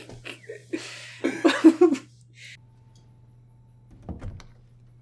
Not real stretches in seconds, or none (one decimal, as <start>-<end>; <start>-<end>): none